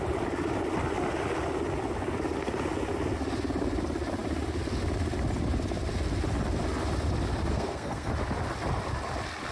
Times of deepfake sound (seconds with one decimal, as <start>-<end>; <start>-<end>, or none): 7.5-8.1